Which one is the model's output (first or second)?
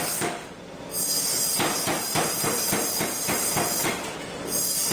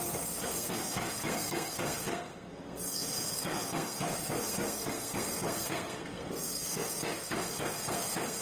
second